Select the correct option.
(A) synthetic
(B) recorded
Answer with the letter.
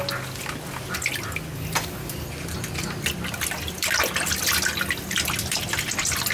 B